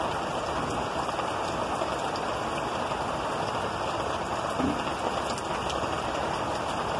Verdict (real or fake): real